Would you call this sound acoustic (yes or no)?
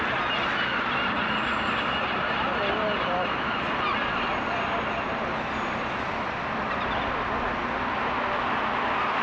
yes